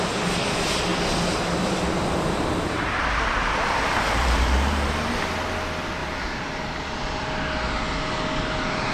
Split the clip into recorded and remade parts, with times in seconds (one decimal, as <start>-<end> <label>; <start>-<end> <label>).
0.0-0.9 recorded; 0.9-5.3 remade; 5.3-6.0 recorded; 6.0-6.6 remade; 6.6-8.9 recorded